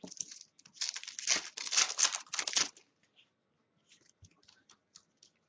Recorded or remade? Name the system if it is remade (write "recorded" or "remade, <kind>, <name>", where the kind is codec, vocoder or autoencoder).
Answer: recorded